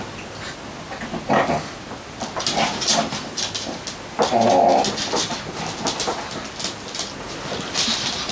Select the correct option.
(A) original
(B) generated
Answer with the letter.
A